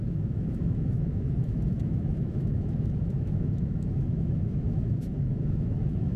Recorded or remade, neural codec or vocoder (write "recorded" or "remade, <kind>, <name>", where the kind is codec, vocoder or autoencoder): remade, autoencoder, DAC-VAE